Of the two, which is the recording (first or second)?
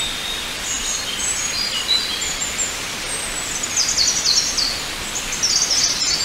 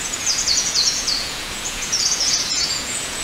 first